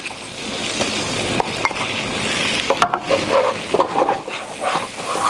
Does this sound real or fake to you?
real